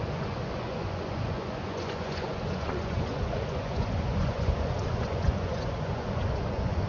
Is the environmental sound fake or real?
fake